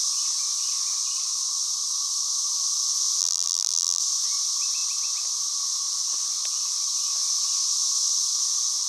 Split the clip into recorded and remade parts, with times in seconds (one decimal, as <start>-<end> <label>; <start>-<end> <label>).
0.0-3.2 recorded; 3.2-4.0 remade; 4.0-8.9 recorded